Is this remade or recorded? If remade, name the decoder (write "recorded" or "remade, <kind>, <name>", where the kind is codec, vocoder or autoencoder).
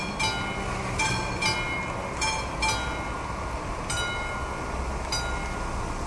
recorded